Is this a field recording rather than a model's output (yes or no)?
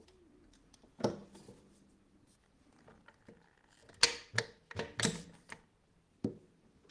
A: yes